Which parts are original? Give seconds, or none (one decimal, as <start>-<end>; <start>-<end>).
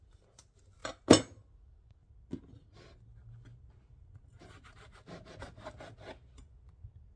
0.0-7.2